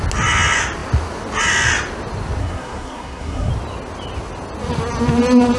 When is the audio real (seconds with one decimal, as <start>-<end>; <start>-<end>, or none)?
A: 0.0-2.4; 3.5-5.6